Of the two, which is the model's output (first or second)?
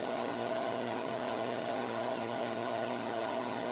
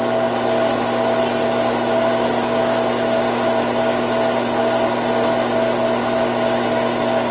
first